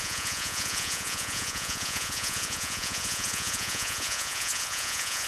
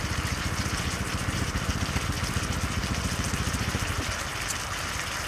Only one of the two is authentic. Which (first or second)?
second